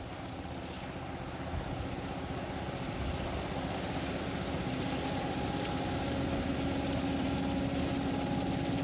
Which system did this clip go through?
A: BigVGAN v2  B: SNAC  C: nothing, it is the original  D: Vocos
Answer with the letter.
C